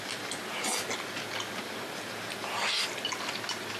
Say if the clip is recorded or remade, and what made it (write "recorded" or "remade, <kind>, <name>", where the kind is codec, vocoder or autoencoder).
recorded